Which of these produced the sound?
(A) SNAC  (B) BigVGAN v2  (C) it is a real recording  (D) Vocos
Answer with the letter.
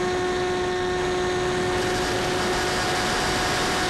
C